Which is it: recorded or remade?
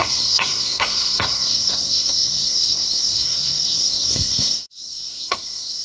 remade